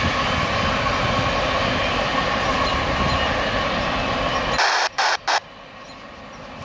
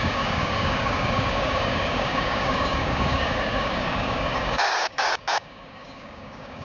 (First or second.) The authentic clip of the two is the first